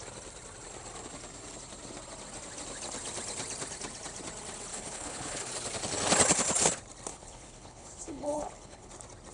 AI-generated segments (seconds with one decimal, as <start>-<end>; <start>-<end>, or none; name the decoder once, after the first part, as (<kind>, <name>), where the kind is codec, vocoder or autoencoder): 4.7-5.5 (codec, HILCodec); 7.1-8.9